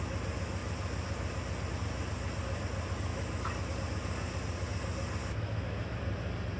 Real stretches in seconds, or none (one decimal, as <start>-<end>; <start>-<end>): 0.0-3.1; 3.7-5.2; 6.0-6.6